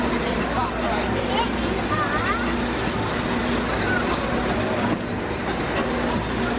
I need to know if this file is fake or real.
real